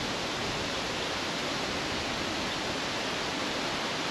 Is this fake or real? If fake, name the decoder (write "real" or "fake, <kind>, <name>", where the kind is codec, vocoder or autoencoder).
real